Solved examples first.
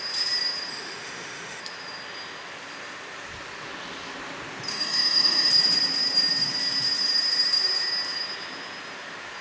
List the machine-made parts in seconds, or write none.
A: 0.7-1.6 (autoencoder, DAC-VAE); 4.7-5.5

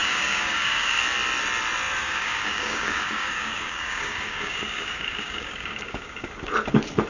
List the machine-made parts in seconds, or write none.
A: 0.0-1.0 (codec, DAC); 2.0-6.3

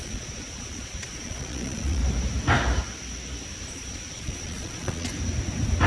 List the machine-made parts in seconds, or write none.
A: 0.0-2.0 (vocoder, Vocos); 3.7-5.1

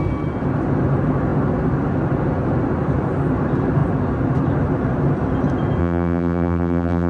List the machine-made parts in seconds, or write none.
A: 5.8-7.1 (vocoder, BigVGAN v2)

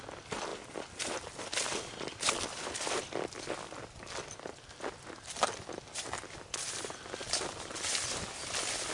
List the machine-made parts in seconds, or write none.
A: none